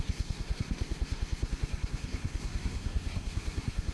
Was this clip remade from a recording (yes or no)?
yes